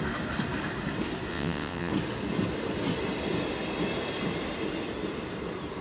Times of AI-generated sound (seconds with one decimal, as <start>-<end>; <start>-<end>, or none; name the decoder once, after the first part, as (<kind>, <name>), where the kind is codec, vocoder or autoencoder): 1.3-1.9 (vocoder, WaveNeXt)